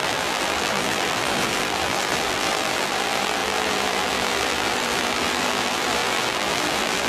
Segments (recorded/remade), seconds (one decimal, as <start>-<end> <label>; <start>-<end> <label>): 0.0-7.1 remade